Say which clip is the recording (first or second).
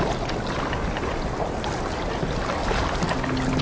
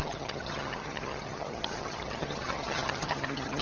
first